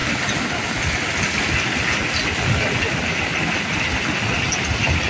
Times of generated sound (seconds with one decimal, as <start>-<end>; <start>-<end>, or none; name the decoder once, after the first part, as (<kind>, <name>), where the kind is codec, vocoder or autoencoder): none